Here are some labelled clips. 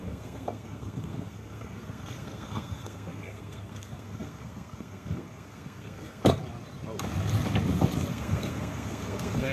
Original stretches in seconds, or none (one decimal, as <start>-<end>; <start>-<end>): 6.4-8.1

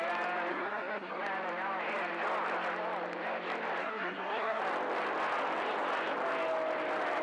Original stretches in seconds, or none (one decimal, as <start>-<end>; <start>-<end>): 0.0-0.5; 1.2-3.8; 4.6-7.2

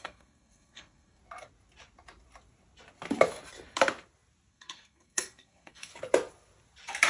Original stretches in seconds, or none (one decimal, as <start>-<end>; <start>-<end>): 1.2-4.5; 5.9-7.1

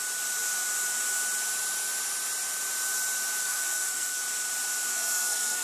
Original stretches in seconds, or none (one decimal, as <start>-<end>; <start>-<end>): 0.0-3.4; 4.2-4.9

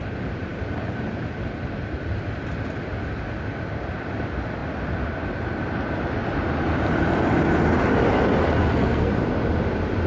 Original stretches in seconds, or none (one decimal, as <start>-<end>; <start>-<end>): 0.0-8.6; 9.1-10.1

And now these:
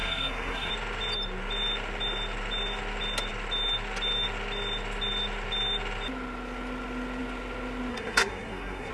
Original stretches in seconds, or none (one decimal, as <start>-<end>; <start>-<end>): 0.7-7.9

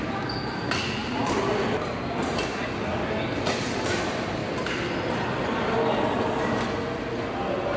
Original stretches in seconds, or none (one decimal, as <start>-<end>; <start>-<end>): 0.0-7.8

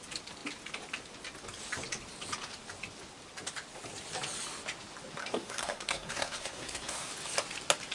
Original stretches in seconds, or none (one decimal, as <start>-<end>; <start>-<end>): 0.0-5.2; 7.1-7.9